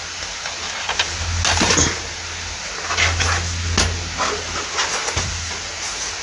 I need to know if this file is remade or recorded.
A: recorded